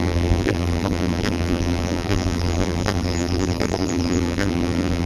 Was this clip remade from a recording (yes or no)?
yes